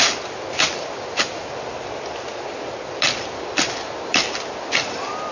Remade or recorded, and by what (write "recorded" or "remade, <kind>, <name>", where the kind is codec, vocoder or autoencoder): recorded